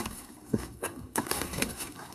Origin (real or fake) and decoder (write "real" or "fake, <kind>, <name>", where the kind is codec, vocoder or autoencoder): fake, codec, SNAC